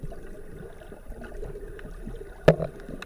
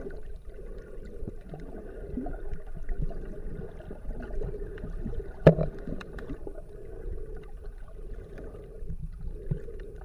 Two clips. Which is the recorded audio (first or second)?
first